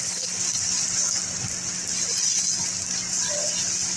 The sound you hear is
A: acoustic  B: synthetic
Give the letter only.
A